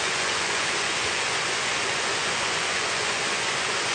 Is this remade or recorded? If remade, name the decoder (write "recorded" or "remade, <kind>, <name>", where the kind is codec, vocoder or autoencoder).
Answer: remade, vocoder, Vocos